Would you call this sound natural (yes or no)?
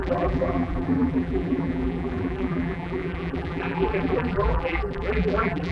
no